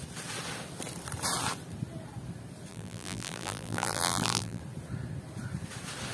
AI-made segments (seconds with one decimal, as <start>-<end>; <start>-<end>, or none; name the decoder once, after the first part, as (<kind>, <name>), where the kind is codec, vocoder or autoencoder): 2.7-4.6 (vocoder, BigVGAN v2)